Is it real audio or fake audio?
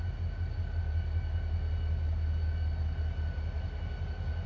real